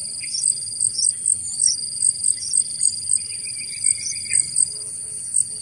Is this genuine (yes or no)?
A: no